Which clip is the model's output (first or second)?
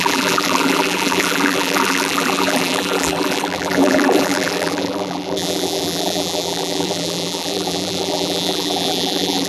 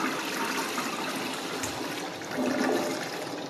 first